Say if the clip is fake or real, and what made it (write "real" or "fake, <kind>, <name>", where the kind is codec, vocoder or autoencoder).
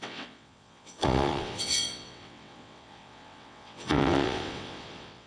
fake, vocoder, WaveNeXt